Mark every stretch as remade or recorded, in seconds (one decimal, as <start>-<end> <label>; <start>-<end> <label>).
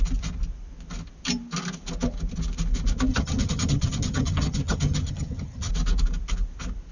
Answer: 0.0-3.1 recorded; 3.1-5.7 remade; 5.7-6.9 recorded